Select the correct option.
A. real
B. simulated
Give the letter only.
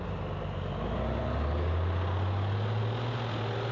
A